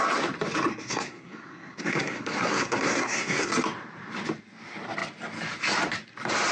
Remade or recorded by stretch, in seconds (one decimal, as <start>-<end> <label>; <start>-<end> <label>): 0.0-0.7 recorded; 0.7-3.5 remade; 3.5-6.5 recorded